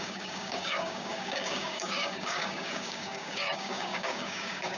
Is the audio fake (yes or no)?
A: yes